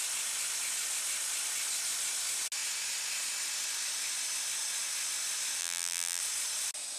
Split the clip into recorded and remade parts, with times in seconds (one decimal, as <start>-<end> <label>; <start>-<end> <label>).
0.0-5.6 recorded; 5.6-6.2 remade; 6.2-7.0 recorded